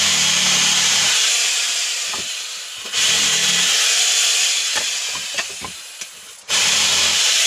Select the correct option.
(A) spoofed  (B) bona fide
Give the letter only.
A